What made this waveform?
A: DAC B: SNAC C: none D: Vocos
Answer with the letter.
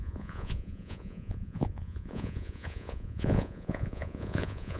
D